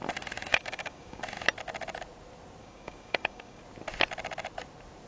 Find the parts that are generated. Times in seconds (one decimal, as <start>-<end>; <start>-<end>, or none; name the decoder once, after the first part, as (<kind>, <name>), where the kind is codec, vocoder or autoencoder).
0.5-1.2 (codec, DAC); 2.6-3.6